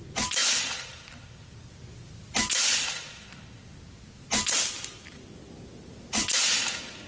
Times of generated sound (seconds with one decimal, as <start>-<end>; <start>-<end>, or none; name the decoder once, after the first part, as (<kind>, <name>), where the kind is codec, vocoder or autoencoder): none